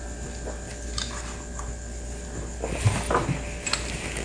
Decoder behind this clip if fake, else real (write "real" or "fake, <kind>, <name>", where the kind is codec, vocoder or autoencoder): real